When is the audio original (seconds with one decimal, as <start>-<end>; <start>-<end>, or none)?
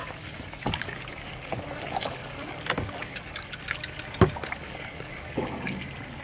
2.6-3.1; 3.6-4.6; 5.8-6.2